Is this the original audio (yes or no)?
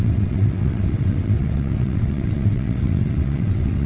no